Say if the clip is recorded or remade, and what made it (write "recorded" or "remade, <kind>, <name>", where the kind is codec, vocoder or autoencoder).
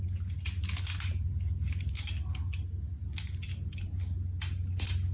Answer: recorded